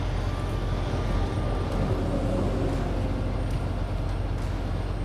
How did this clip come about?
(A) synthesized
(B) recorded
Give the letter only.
B